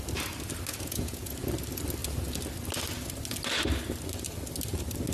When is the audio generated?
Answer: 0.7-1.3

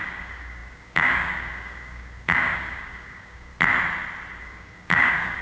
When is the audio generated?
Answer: 0.0-3.5; 4.4-5.4

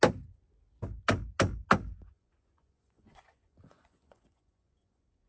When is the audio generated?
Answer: 2.1-5.3